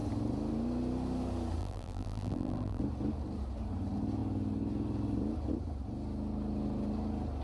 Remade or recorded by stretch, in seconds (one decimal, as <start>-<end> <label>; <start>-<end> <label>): 0.0-1.6 recorded; 1.6-2.8 remade; 2.8-7.4 recorded